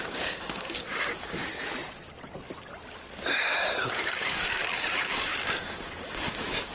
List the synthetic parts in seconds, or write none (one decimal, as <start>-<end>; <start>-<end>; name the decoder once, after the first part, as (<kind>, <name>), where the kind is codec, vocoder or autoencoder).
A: 0.0-1.5 (codec, DAC); 3.9-6.7